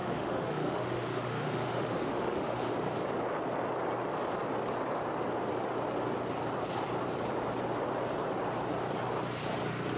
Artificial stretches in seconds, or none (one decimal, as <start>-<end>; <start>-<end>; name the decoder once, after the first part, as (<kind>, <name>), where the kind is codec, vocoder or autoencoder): 0.0-2.7 (autoencoder, DAC-VAE)